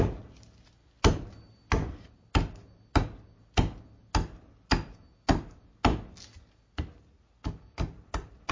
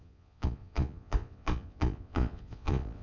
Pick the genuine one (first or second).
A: first